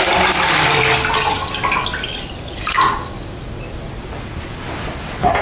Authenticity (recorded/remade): recorded